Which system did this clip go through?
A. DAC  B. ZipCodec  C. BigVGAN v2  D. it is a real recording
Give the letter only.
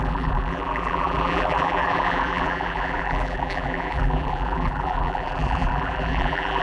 C